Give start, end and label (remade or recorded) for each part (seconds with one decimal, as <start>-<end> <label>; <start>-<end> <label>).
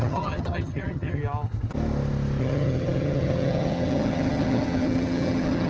0.0-1.2 remade; 1.2-2.4 recorded; 2.4-5.7 remade